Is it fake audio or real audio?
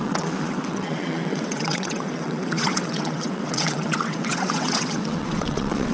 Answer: fake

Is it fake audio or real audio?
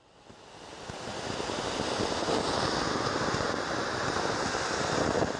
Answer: real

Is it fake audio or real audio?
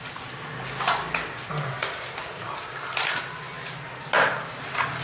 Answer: real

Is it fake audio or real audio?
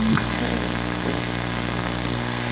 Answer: fake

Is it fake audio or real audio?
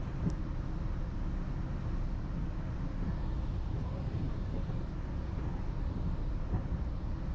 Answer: real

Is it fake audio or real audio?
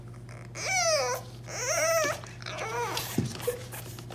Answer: real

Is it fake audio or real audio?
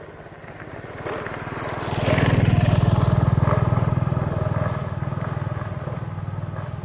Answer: real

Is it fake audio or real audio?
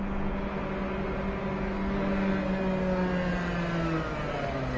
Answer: real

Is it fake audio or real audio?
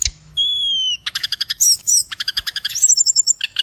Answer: fake